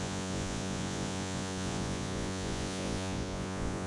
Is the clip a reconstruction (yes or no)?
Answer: yes